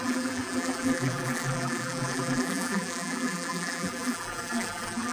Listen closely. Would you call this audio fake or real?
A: fake